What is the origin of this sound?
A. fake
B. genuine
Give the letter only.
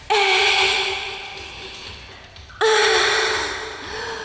B